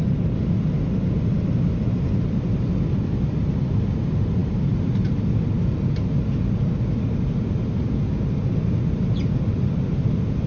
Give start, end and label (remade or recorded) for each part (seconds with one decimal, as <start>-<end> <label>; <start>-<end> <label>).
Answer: 0.0-10.5 recorded